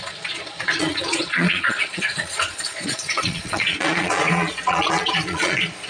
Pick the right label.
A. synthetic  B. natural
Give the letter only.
A